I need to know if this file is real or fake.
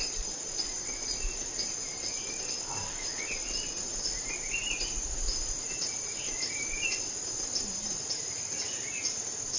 real